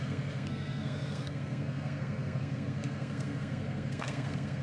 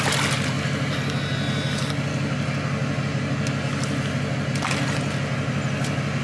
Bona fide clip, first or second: second